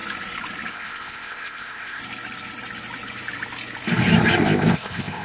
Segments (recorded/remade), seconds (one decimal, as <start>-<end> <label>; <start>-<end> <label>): 0.0-0.7 recorded; 0.7-2.0 remade; 2.0-4.4 recorded; 4.4-5.2 remade